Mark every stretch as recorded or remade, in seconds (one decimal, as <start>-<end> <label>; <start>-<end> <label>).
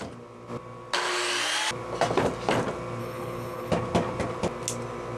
0.0-3.0 recorded; 3.0-3.7 remade; 3.7-5.2 recorded